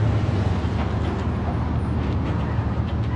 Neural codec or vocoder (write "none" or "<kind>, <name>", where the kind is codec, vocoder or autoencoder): none